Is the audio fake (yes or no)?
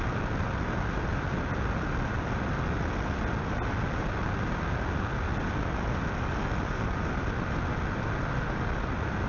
no